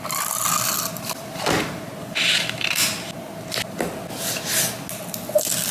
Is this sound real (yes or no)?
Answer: yes